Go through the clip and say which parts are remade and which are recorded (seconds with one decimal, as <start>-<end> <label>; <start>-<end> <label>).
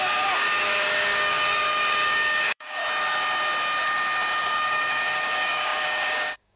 0.0-2.8 remade; 2.8-4.4 recorded; 4.4-6.6 remade